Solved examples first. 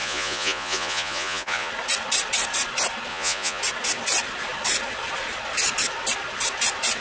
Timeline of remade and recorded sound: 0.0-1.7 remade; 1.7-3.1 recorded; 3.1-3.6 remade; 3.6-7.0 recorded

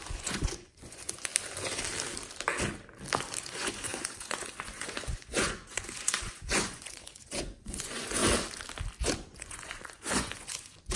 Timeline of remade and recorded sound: 0.0-1.3 remade; 1.3-3.4 recorded; 3.4-8.2 remade; 8.2-9.0 recorded; 9.0-11.0 remade

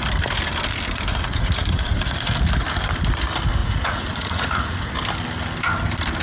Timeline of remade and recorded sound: 0.0-1.1 recorded; 1.1-2.3 remade; 2.3-3.6 recorded; 3.6-4.9 remade; 4.9-6.2 recorded

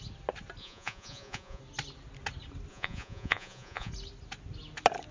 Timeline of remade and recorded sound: 0.0-0.6 recorded; 0.6-1.6 remade; 1.6-2.7 recorded; 2.7-3.9 remade; 3.9-5.1 recorded

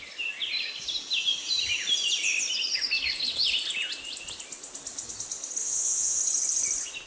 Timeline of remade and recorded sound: 0.0-5.6 recorded; 5.6-6.2 remade; 6.2-7.1 recorded

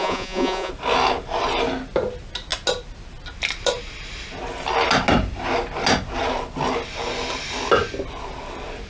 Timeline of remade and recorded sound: 0.0-0.7 remade; 0.7-8.9 recorded

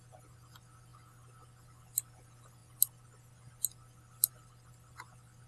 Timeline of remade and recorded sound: 0.0-5.5 recorded

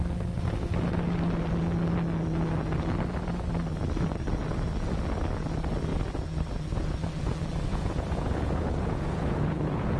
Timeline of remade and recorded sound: 0.0-7.7 recorded; 7.7-10.0 remade